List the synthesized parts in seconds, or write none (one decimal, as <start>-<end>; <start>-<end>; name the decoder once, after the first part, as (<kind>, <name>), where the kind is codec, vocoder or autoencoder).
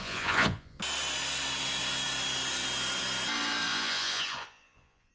0.0-0.8 (vocoder, Vocos); 3.7-5.1